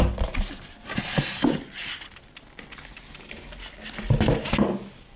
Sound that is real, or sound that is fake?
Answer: real